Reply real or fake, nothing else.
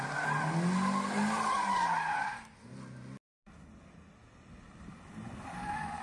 real